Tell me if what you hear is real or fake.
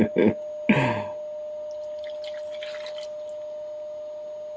real